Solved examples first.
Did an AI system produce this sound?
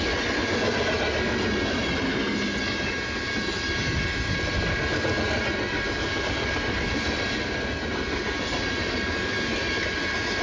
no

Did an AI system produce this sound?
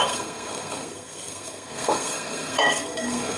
yes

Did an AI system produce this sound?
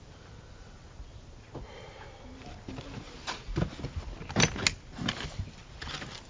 no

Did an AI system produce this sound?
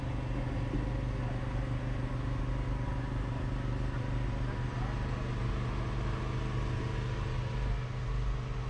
no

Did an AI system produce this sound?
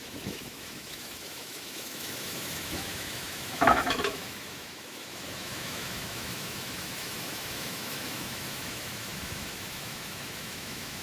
yes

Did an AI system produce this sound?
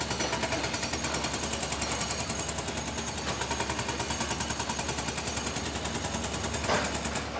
no